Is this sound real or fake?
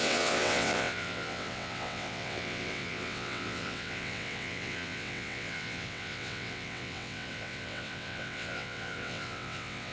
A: fake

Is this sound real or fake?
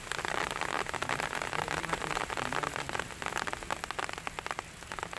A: real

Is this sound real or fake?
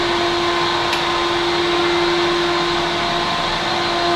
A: real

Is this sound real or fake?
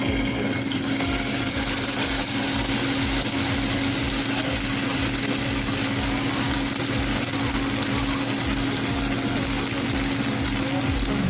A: real